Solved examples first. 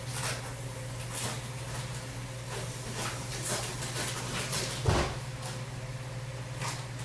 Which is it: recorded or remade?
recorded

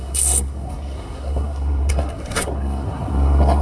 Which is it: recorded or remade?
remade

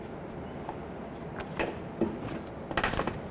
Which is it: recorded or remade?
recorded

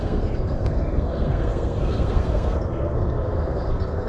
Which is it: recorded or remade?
remade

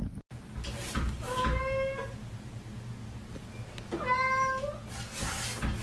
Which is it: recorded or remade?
recorded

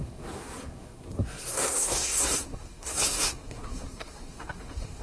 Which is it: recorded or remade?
remade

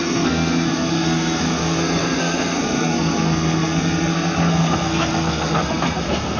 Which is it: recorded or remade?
remade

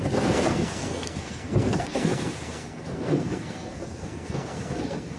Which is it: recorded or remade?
remade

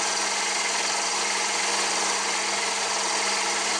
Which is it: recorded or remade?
recorded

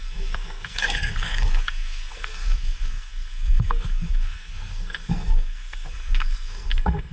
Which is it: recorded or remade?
remade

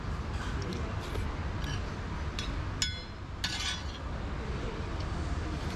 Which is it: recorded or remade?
recorded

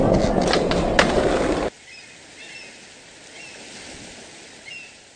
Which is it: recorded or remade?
recorded